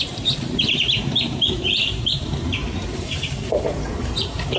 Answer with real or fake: fake